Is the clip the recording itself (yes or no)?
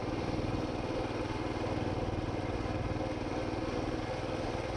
yes